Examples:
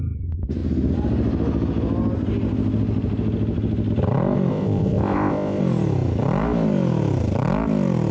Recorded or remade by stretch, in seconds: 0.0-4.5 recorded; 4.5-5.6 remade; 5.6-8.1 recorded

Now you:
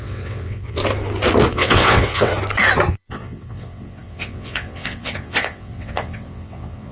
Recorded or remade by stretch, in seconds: 0.0-0.8 remade; 0.8-1.5 recorded; 1.5-2.3 remade; 2.3-2.9 recorded; 2.9-6.9 remade